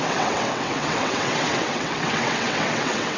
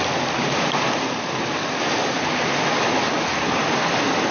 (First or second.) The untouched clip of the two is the second